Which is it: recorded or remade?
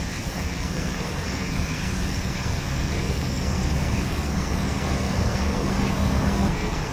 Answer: remade